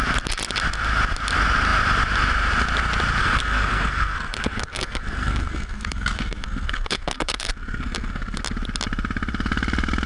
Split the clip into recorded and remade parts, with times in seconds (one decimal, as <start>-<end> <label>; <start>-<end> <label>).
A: 0.0-3.2 recorded; 3.2-8.4 remade; 8.4-10.1 recorded